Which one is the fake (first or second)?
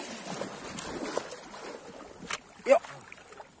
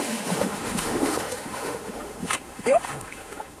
second